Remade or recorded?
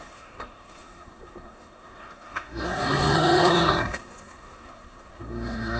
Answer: remade